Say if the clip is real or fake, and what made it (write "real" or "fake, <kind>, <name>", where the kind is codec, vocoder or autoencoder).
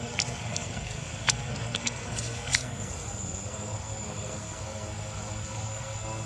fake, codec, SNAC